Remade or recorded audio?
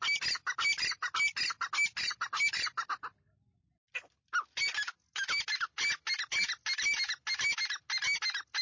recorded